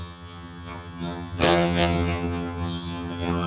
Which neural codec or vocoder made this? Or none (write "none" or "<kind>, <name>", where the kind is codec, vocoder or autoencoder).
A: vocoder, HiFi-GAN